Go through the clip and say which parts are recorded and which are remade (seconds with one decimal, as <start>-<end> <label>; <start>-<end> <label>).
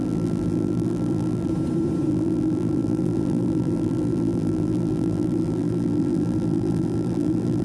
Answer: 0.0-1.5 remade; 1.5-2.1 recorded; 2.1-7.6 remade